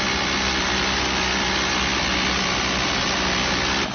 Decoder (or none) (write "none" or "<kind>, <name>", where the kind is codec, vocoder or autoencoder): none